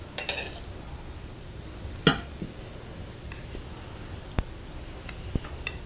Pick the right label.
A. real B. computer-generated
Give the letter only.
A